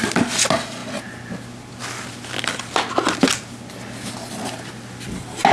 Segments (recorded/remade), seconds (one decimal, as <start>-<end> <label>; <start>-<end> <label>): 0.0-5.5 recorded